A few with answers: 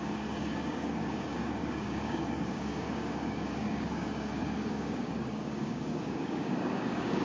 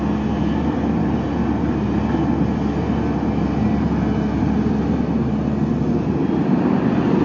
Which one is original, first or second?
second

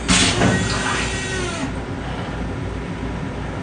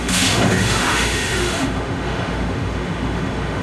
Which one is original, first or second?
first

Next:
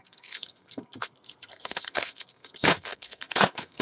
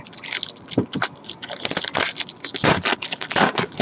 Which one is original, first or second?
second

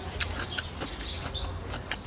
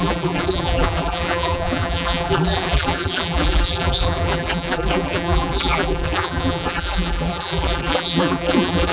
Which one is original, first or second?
first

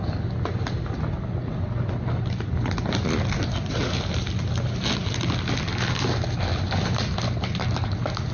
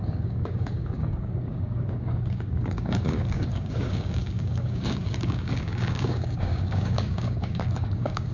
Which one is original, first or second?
first